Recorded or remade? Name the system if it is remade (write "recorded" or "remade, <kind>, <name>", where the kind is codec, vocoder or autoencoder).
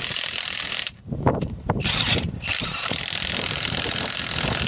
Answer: remade, vocoder, BigVGAN v2